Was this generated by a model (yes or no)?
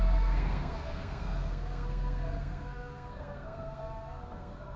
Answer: yes